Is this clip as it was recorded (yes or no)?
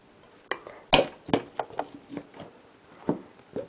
yes